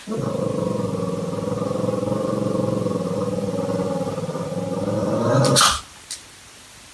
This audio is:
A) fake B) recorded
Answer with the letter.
B